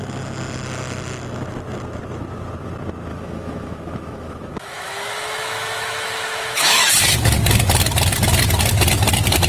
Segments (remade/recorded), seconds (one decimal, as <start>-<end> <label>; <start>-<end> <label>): 0.0-3.1 recorded; 3.1-6.9 remade; 6.9-9.5 recorded